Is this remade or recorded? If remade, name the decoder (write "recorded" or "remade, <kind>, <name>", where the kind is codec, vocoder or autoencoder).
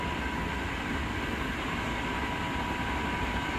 recorded